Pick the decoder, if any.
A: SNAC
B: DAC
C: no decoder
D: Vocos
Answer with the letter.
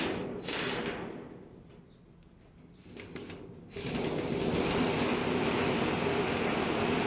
C